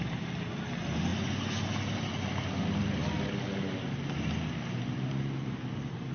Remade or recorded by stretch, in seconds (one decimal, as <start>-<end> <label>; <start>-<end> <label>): 0.0-6.1 recorded